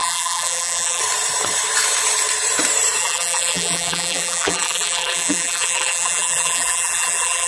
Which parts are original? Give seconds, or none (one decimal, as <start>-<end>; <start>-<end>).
1.0-3.0